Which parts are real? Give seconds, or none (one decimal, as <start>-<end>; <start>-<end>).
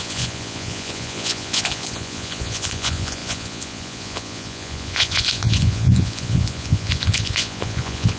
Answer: none